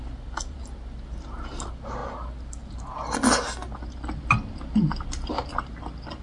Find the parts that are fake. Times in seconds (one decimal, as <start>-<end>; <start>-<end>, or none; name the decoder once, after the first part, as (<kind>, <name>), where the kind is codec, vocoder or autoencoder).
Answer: none